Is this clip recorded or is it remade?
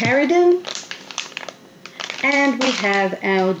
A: remade